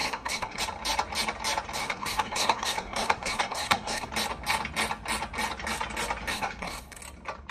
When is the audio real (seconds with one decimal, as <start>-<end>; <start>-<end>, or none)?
0.6-1.8; 4.1-6.3; 7.0-7.5